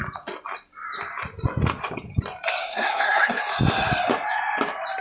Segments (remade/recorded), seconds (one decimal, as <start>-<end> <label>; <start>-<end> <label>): 0.0-2.6 recorded; 2.6-3.4 remade; 3.4-5.0 recorded